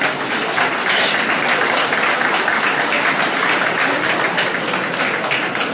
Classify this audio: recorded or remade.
recorded